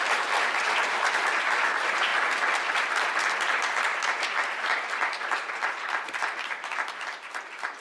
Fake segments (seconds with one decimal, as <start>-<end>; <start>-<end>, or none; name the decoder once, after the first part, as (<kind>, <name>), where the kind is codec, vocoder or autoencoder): none